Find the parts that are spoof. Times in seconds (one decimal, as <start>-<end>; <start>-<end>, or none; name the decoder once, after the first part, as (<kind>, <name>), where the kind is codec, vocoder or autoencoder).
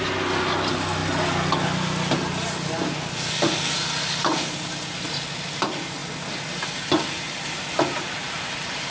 none